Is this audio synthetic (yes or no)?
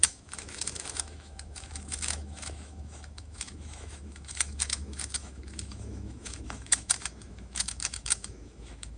yes